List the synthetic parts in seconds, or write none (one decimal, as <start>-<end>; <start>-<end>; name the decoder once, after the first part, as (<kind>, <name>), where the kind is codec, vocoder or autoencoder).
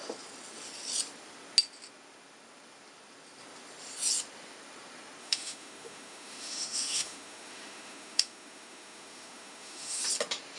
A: 5.2-10.0 (autoencoder, DAC-VAE)